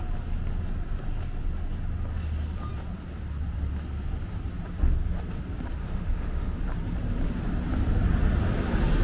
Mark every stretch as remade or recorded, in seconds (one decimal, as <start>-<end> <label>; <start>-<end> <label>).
0.0-5.8 recorded; 5.8-6.6 remade; 6.6-9.0 recorded